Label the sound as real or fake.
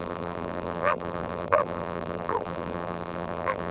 fake